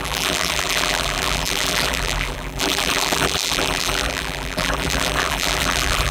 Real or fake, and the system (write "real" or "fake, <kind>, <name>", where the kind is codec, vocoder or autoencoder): fake, vocoder, BigVGAN v2